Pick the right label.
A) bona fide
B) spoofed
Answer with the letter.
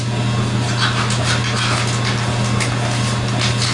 A